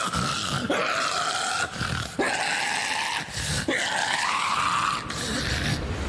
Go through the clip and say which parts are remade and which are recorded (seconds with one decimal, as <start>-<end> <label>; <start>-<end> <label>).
0.0-4.0 recorded; 4.0-4.6 remade; 4.6-6.1 recorded